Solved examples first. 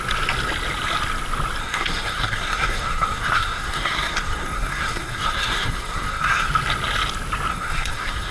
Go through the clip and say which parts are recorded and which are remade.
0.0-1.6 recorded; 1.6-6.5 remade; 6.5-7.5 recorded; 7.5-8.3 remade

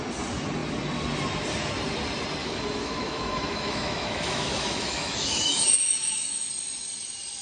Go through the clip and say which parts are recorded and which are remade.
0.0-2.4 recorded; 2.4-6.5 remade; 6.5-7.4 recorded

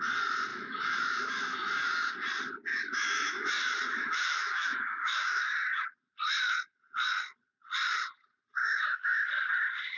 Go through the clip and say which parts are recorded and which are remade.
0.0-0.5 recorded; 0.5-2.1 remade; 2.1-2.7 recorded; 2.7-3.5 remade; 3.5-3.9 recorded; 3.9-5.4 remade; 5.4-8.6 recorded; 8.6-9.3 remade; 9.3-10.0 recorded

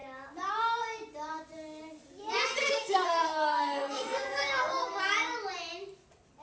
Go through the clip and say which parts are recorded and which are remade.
0.0-2.6 recorded; 2.6-5.0 remade; 5.0-6.4 recorded

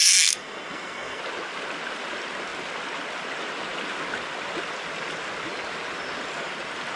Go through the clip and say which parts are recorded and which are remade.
0.0-1.2 remade; 1.2-7.0 recorded

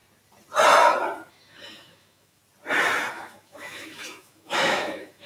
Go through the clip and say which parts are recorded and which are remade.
0.0-1.3 recorded; 1.3-2.4 remade; 2.4-3.1 recorded; 3.1-5.3 remade

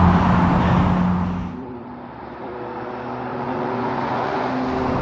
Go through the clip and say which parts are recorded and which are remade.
0.0-3.3 recorded; 3.3-4.5 remade; 4.5-5.0 recorded